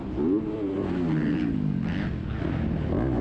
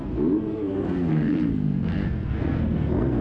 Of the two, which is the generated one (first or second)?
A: second